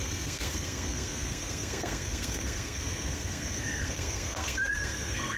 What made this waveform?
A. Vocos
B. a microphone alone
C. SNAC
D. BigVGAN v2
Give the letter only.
C